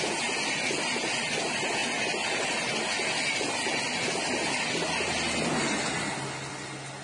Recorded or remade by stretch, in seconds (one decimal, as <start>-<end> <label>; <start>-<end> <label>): 0.0-7.0 recorded